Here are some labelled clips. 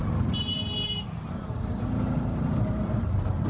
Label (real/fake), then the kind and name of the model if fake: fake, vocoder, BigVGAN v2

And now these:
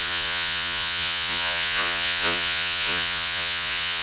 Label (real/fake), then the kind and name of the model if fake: fake, vocoder, Vocos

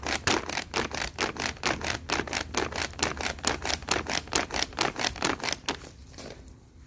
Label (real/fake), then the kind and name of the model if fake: real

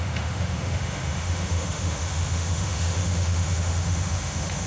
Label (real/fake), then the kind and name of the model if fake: fake, autoencoder, DAC-VAE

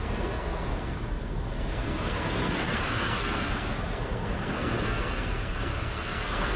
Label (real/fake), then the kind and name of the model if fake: fake, codec, SNAC